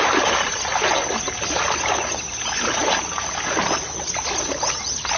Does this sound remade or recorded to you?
recorded